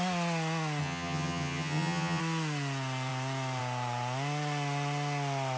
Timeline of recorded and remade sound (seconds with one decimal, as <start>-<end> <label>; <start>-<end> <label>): 0.0-0.8 recorded; 0.8-2.2 remade; 2.2-5.6 recorded